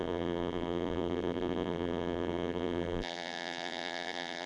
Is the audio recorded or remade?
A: remade